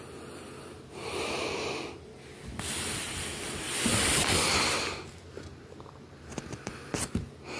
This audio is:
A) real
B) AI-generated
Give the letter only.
A